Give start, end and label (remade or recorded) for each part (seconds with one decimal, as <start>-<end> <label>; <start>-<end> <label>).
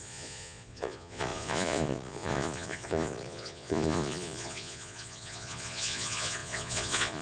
0.0-7.2 remade